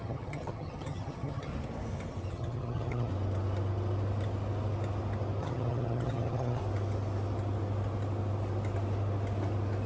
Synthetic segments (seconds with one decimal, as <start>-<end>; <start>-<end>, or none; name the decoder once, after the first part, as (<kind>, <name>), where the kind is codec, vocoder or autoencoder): 0.0-1.5 (vocoder, HiFi-GAN); 2.3-3.1; 5.4-6.6